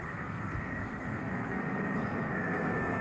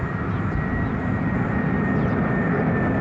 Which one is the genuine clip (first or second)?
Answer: second